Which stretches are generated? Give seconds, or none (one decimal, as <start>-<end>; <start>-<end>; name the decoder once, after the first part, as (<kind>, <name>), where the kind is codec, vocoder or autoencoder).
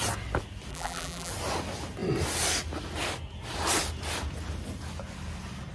0.7-1.3 (vocoder, BigVGAN v2)